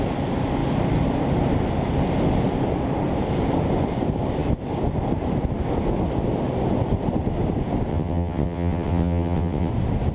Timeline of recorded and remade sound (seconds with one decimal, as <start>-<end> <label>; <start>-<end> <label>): 0.0-7.9 recorded; 7.9-9.7 remade; 9.7-10.1 recorded